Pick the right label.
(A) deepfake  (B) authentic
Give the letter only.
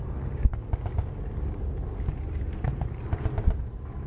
A